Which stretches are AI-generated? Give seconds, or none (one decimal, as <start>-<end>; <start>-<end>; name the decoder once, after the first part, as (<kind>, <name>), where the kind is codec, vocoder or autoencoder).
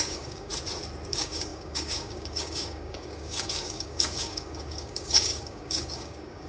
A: 0.0-0.5 (codec, DAC); 1.1-6.5